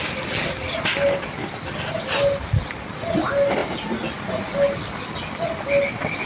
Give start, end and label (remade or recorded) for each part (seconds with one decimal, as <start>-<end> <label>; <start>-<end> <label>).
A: 0.0-6.2 recorded